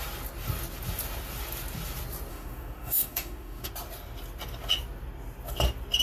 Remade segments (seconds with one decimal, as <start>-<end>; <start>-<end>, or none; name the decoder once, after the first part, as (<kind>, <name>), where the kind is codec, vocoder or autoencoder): 2.3-3.7 (autoencoder, DAC-VAE)